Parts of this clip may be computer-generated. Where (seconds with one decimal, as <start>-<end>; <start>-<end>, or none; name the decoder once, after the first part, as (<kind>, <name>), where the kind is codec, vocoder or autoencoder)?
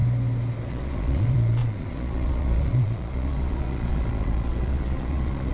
0.7-5.5 (vocoder, Vocos)